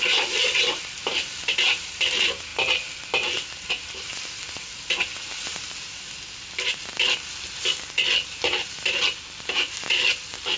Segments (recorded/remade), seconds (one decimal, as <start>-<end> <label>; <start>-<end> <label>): 0.0-10.6 recorded